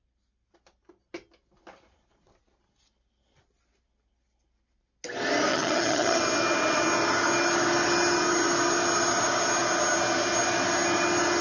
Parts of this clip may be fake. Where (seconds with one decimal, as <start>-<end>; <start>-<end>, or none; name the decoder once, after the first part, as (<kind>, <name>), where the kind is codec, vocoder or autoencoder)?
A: 5.5-6.2 (vocoder, HiFi-GAN)